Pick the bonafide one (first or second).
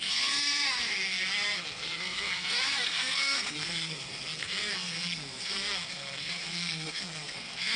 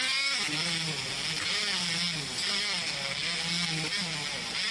second